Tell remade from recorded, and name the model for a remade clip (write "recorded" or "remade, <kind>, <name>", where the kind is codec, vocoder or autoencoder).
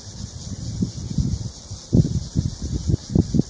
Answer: recorded